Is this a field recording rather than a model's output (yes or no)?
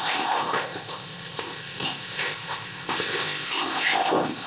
no